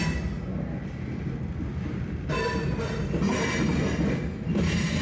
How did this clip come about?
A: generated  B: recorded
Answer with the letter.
B